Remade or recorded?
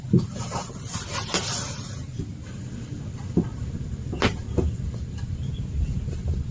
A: recorded